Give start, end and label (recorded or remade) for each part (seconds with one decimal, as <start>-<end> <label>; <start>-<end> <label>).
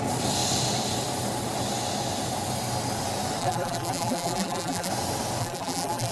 0.0-3.4 recorded; 3.4-4.9 remade; 4.9-5.4 recorded; 5.4-6.1 remade